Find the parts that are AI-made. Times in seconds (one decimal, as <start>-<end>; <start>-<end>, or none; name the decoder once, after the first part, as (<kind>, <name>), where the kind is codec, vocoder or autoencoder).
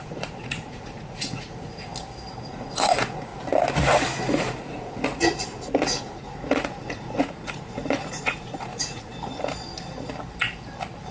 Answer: 0.0-1.9 (vocoder, Vocos); 2.4-3.3; 4.2-9.1